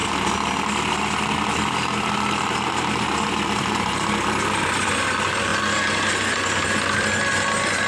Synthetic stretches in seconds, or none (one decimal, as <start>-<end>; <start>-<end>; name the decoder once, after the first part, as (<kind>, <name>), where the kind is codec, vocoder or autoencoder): none

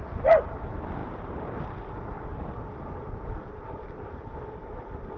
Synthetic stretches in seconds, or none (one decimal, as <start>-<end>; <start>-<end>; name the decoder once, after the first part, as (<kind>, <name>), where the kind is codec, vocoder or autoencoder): none

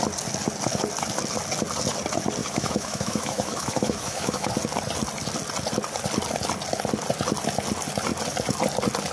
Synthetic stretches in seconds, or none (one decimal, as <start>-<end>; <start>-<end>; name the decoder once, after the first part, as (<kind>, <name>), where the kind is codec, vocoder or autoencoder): 2.4-4.5 (autoencoder, DAC-VAE)